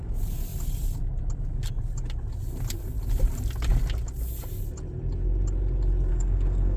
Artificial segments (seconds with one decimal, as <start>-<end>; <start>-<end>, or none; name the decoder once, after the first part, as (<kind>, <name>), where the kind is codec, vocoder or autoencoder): 6.1-6.8 (codec, SNAC)